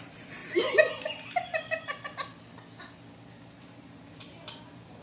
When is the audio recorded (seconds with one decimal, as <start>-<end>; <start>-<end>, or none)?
0.4-3.4